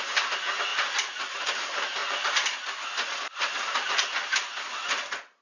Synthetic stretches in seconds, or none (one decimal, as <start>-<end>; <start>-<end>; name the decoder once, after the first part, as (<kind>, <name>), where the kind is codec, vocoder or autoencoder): none